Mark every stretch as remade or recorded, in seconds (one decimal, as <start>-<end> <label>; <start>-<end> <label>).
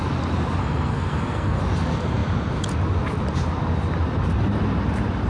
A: 0.0-0.6 recorded; 0.6-1.6 remade; 1.6-5.3 recorded